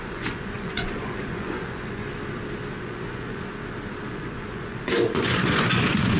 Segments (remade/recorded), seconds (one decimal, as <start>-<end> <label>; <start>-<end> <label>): 0.0-2.0 remade; 2.0-2.8 recorded; 2.8-3.5 remade; 3.5-4.1 recorded; 4.1-6.2 remade